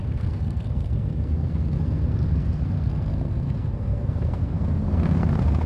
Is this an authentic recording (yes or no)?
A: no